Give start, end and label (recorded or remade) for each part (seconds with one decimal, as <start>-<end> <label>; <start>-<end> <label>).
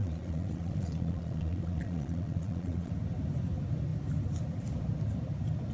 0.0-2.9 remade; 2.9-5.7 recorded